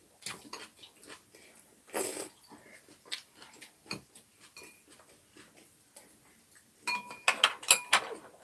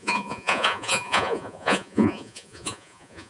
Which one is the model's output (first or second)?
second